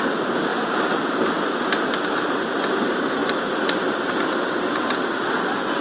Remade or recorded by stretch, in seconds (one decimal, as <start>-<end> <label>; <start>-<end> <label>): 0.0-5.8 recorded